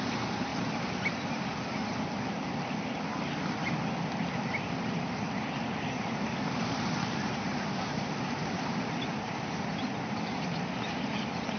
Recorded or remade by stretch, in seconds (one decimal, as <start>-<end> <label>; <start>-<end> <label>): 0.0-11.6 recorded

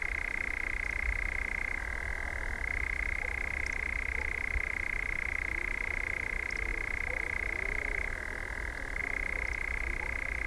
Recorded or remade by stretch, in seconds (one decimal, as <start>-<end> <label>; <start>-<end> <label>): 0.0-6.7 recorded; 6.7-9.0 remade; 9.0-10.5 recorded

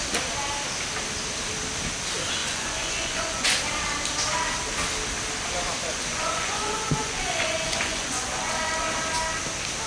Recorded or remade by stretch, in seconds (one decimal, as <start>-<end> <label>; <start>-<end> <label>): 0.0-2.4 recorded; 2.4-3.6 remade; 3.6-5.9 recorded; 5.9-8.7 remade; 8.7-9.9 recorded

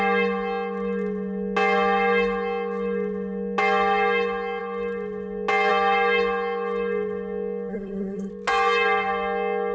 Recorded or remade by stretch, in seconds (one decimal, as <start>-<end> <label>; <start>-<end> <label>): 0.0-7.7 recorded; 7.7-8.3 remade; 8.3-9.7 recorded

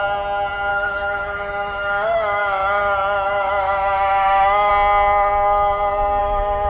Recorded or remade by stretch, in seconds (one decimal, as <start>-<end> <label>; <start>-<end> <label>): 0.0-0.7 recorded; 0.7-4.7 remade; 4.7-6.2 recorded; 6.2-6.7 remade

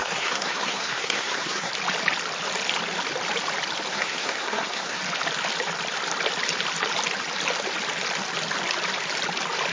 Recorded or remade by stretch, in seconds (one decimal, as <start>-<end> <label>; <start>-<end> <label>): 0.0-1.7 remade; 1.7-3.9 recorded; 3.9-5.0 remade; 5.0-9.7 recorded

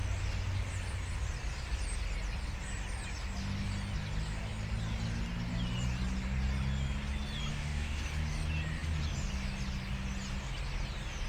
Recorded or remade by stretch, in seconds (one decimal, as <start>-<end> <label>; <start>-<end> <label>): 0.0-7.5 recorded; 7.5-8.0 remade; 8.0-11.3 recorded

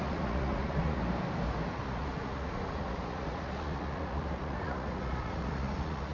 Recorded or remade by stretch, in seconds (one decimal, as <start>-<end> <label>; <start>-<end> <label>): 0.0-1.0 remade; 1.0-1.7 recorded; 1.7-6.1 remade